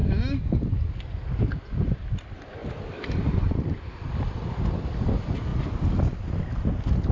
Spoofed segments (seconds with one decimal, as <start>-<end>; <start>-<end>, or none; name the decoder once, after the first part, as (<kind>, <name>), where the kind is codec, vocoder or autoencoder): 1.4-2.6 (vocoder, BigVGAN v2); 3.4-7.1